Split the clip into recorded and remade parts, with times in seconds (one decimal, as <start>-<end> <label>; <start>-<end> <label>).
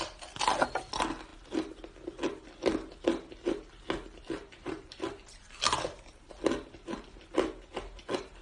0.0-8.4 recorded